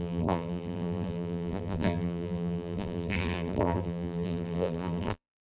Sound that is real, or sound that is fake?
fake